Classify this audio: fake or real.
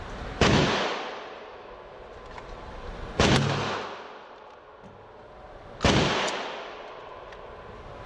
real